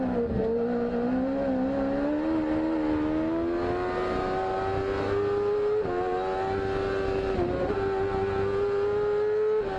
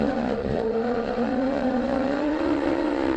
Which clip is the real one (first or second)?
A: first